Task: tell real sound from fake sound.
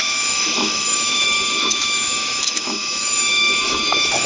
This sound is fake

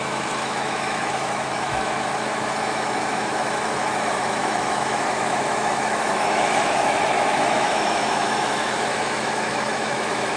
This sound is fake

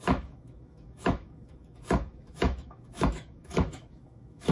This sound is fake